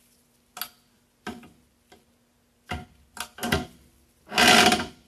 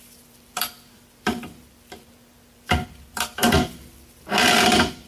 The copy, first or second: second